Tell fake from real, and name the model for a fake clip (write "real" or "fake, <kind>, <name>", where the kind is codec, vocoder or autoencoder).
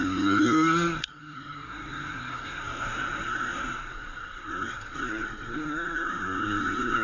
fake, codec, SNAC